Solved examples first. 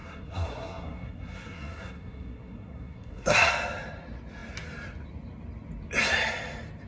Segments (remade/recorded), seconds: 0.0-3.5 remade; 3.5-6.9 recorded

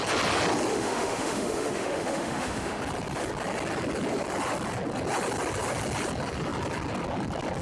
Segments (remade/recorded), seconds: 0.0-0.7 recorded; 0.7-2.8 remade; 2.8-7.6 recorded

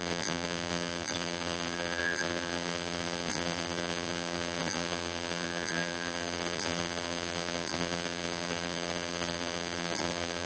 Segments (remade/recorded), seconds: 0.0-10.5 remade